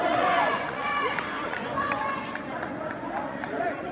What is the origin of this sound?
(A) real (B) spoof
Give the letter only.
B